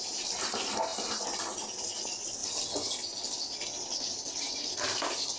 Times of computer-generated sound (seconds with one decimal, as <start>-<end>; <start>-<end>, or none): none